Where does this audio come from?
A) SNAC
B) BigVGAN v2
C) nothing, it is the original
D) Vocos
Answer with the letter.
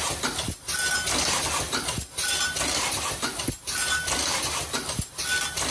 C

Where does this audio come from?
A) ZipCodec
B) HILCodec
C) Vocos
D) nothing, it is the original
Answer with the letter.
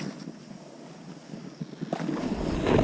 D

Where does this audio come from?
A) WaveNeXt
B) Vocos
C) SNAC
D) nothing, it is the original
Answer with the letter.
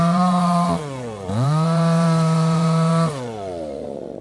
B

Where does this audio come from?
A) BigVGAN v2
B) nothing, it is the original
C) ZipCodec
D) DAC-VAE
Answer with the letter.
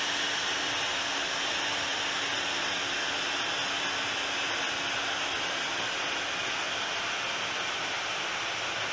B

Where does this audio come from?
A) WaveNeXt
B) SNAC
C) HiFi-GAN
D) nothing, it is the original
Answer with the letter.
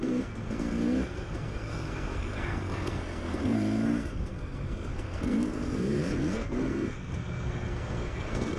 B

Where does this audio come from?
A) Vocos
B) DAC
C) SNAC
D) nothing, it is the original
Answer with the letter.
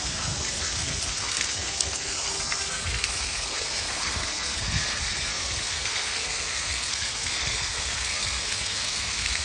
C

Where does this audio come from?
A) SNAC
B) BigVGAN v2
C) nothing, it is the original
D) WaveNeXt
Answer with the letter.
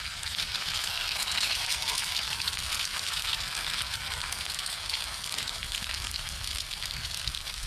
A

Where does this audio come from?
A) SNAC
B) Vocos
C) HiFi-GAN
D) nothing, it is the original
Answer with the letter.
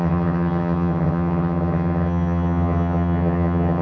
C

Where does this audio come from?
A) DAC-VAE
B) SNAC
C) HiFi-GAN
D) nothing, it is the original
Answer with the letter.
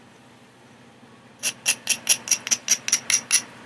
D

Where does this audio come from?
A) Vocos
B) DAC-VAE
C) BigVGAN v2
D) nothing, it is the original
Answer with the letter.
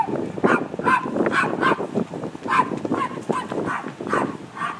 D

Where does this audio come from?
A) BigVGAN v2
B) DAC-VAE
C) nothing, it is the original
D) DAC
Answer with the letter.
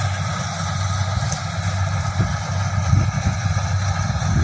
C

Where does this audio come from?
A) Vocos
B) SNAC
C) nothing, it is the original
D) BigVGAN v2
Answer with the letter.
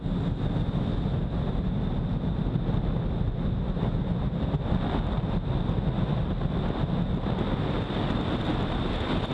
C